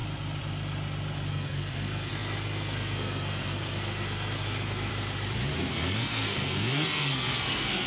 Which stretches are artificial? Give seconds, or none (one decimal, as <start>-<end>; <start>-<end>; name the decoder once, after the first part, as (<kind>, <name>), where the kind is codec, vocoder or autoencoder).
1.3-4.9 (codec, SNAC); 5.7-7.9